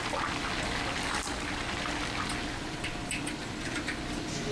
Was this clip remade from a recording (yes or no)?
no